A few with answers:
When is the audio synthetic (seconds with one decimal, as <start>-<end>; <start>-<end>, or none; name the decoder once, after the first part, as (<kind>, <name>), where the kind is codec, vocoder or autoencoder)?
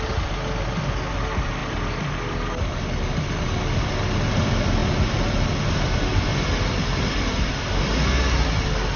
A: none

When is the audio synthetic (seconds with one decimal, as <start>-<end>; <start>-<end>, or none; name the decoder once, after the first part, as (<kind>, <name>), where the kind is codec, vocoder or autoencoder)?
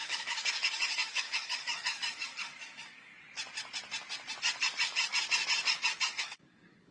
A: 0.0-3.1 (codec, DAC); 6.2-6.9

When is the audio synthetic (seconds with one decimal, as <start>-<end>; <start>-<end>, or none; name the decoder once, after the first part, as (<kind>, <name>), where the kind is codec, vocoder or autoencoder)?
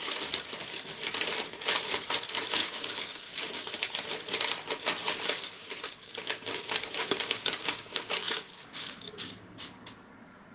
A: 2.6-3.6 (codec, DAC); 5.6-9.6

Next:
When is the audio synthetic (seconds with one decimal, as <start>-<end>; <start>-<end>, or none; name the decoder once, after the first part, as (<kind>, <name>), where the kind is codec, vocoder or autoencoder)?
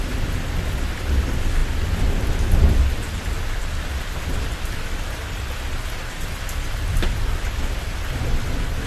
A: none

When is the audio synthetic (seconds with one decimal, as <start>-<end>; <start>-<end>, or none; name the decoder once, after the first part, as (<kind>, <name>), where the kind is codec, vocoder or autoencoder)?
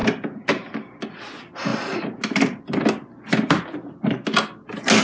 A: none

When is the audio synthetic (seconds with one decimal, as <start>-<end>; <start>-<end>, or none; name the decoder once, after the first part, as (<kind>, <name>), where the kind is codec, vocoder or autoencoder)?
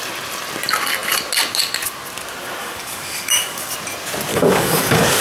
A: 2.6-3.7 (codec, DAC); 4.3-5.2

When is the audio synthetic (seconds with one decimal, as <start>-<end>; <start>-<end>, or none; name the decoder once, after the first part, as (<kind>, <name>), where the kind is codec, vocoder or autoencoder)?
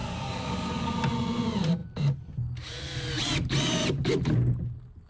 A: 0.0-0.9 (codec, DAC)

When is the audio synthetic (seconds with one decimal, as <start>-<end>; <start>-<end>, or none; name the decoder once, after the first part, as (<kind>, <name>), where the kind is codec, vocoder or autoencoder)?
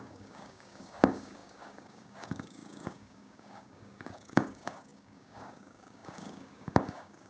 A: 0.0-7.3 (codec, DAC)